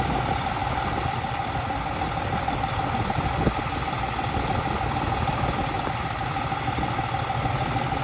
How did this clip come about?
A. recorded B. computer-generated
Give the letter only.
A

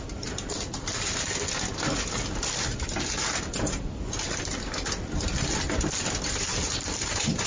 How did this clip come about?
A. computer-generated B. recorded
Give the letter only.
B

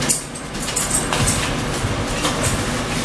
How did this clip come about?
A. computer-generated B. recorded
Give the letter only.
B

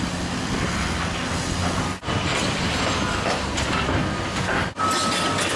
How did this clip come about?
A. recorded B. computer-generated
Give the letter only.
A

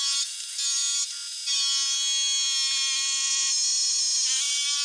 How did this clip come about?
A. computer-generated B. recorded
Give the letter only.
B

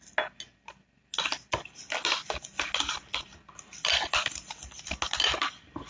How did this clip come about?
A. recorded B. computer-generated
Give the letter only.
A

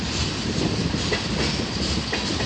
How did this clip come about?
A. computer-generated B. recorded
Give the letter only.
B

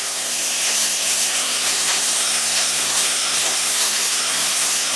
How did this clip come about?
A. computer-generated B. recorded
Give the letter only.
A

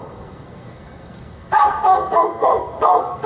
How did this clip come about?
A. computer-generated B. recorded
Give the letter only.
A